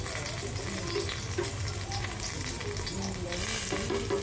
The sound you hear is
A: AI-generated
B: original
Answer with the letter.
B